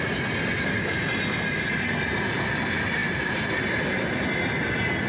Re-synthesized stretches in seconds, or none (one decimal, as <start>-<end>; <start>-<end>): 3.0-4.0